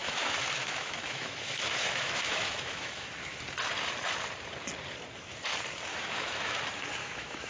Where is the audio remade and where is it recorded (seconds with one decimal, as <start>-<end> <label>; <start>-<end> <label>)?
0.0-3.1 remade; 3.1-5.9 recorded; 5.9-6.6 remade; 6.6-7.0 recorded; 7.0-7.5 remade

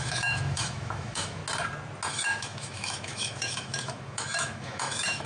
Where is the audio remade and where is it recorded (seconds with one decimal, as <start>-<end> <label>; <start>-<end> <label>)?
0.0-1.4 remade; 1.4-2.1 recorded; 2.1-5.3 remade

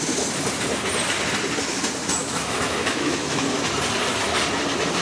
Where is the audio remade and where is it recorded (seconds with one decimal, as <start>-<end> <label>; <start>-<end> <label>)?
0.0-2.2 recorded; 2.2-3.4 remade; 3.4-5.0 recorded

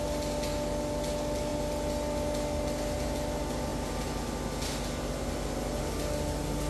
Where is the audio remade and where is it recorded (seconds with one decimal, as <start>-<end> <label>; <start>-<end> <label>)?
0.0-6.7 recorded